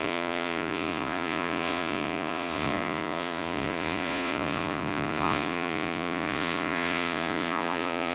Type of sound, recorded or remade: remade